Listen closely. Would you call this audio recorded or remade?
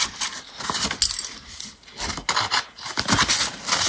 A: recorded